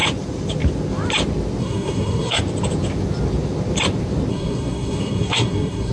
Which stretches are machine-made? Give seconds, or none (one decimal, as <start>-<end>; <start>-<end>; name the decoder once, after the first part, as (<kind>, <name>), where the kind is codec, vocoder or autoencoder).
1.6-2.4 (codec, SNAC); 4.3-5.9